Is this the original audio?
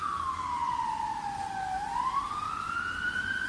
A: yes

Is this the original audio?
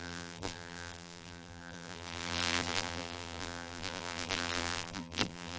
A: no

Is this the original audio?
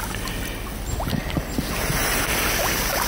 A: yes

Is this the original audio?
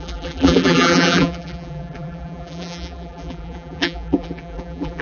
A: no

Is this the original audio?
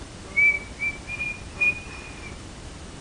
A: no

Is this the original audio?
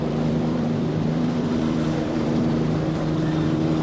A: no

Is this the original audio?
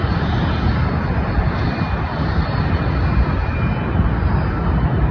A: no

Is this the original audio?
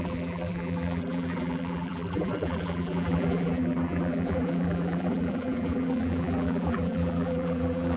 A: no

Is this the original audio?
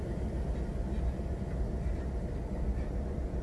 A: yes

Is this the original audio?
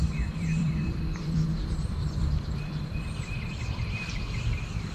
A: no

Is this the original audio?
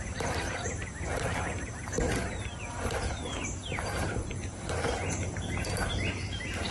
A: no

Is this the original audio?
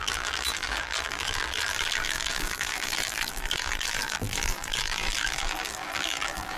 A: no